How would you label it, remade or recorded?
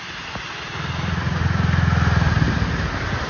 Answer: recorded